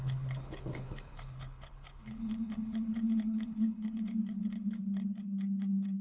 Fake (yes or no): yes